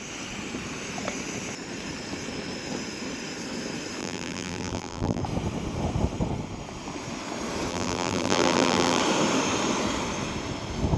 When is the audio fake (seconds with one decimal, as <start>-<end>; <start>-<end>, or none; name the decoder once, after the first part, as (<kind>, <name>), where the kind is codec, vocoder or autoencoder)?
4.0-5.2 (vocoder, BigVGAN v2); 7.7-9.0